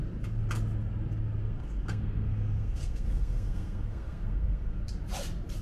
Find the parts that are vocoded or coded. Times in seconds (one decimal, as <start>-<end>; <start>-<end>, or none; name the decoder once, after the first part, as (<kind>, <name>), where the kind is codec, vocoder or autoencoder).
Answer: 1.4-4.8 (codec, SNAC)